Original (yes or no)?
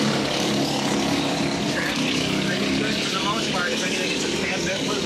no